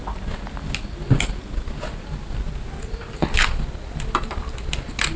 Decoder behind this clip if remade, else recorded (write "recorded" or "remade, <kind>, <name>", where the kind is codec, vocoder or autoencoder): recorded